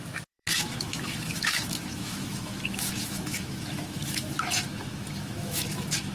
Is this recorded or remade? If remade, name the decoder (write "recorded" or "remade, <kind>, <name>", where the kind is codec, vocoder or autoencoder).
remade, autoencoder, DAC-VAE